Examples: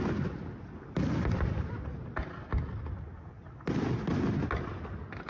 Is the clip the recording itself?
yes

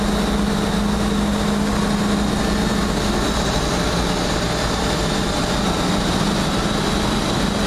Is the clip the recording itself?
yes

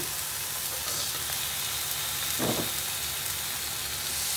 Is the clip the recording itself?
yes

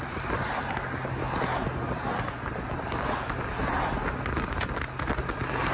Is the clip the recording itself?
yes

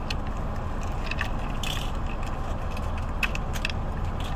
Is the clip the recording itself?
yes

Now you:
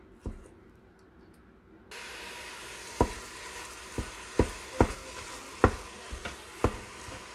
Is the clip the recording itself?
yes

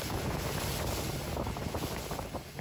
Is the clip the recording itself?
yes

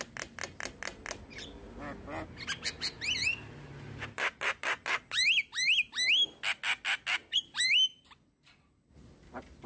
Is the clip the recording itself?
yes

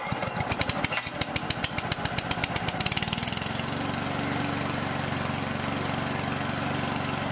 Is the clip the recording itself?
yes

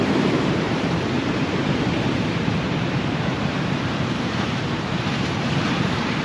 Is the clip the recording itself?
no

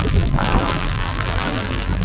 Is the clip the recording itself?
no